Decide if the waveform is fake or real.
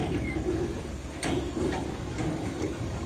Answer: fake